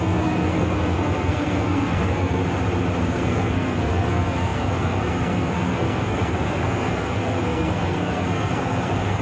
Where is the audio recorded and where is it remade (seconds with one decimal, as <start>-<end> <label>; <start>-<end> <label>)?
0.0-2.4 remade; 2.4-3.0 recorded; 3.0-9.2 remade